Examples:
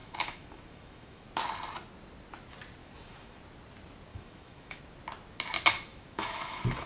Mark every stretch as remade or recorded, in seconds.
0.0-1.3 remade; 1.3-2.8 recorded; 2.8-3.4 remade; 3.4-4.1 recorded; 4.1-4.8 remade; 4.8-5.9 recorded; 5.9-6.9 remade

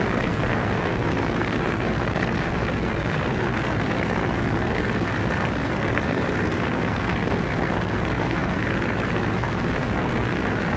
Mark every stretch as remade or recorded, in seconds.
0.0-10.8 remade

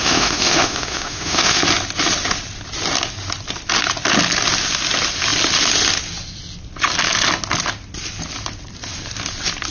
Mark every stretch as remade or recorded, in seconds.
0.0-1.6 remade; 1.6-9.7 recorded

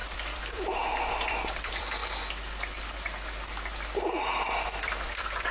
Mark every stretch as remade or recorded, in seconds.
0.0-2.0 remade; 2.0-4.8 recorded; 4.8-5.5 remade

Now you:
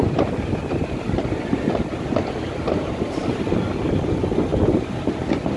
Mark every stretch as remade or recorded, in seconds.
0.0-5.6 recorded